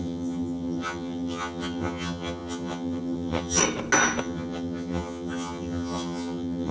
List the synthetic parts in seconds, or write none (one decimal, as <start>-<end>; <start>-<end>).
0.0-3.6; 4.2-6.7